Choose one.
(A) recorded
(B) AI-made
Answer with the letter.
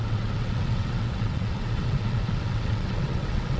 B